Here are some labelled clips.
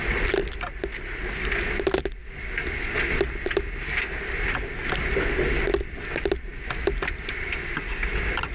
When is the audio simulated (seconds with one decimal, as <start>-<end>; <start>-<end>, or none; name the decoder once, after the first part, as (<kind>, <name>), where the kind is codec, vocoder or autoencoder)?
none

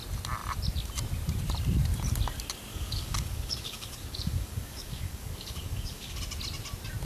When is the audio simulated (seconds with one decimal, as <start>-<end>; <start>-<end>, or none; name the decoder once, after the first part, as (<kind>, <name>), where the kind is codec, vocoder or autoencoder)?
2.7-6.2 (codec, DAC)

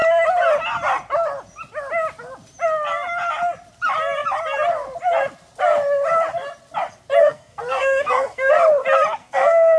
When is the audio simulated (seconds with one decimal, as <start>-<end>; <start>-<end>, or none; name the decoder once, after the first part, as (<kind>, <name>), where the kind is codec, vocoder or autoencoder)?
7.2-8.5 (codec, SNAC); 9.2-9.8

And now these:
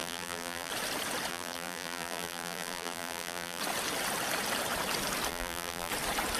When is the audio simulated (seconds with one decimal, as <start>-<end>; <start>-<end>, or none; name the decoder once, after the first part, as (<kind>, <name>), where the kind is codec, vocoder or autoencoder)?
0.0-0.7 (vocoder, BigVGAN v2); 1.3-3.6; 5.3-5.9